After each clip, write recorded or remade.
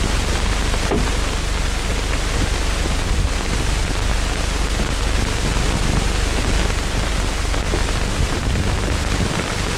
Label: recorded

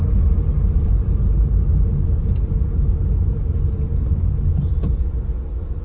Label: recorded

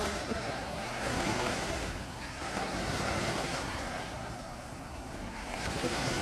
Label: remade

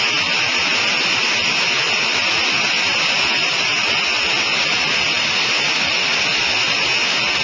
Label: recorded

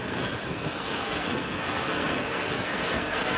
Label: remade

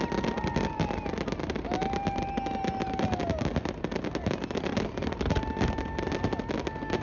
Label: recorded